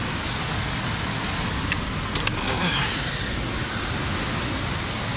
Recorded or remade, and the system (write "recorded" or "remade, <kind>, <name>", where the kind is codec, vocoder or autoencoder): recorded